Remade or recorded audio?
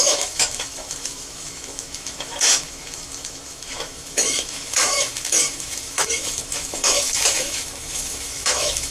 remade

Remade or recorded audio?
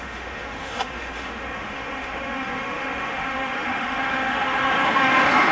remade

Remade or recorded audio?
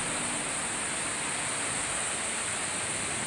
recorded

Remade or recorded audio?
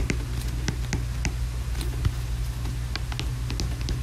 recorded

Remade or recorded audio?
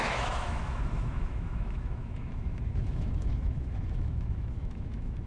remade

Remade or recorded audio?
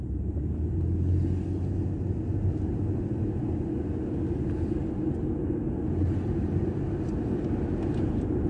recorded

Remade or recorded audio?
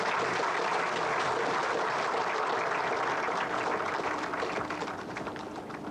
recorded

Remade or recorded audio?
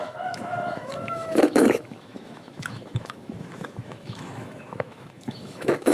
remade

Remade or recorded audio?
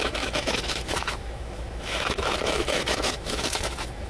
remade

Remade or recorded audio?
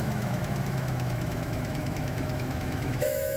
remade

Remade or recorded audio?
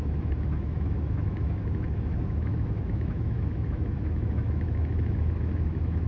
remade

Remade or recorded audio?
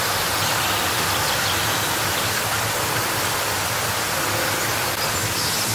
recorded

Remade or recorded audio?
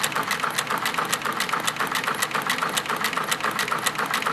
recorded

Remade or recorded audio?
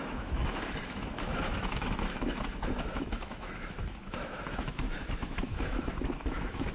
remade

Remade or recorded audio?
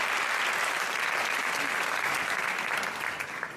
recorded